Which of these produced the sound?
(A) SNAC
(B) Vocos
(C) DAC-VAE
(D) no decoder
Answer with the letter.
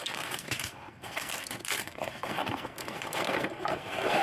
A